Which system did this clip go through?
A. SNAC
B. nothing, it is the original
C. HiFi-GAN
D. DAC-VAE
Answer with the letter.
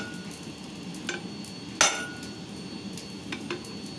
B